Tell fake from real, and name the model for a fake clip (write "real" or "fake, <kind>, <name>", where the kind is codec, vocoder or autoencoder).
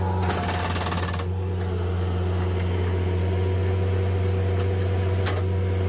real